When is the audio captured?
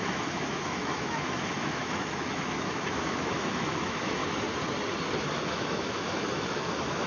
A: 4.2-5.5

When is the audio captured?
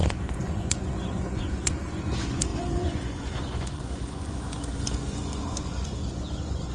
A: none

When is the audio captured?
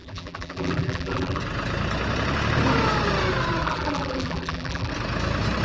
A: 1.4-3.6; 4.9-5.6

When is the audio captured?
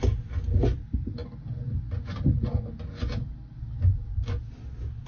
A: 0.0-5.1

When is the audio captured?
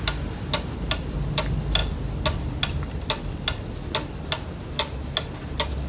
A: 0.0-5.9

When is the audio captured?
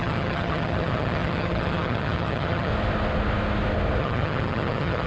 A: 2.7-4.0